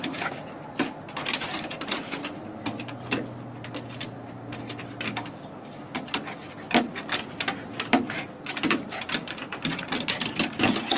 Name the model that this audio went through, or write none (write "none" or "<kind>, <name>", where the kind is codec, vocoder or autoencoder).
none